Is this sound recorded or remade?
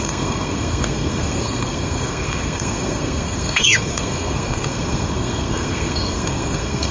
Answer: remade